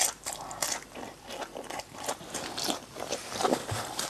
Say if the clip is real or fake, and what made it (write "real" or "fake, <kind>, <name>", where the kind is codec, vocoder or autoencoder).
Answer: fake, vocoder, BigVGAN v2